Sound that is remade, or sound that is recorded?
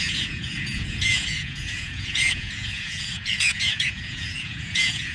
remade